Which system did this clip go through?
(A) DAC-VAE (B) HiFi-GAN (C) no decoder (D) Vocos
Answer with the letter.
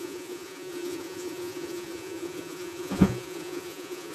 D